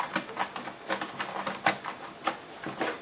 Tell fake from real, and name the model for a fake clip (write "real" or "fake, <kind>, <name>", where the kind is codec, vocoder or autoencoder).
real